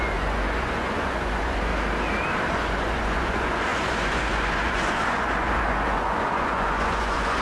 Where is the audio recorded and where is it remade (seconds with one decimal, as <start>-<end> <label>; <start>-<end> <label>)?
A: 0.0-1.7 remade; 1.7-2.5 recorded; 2.5-7.4 remade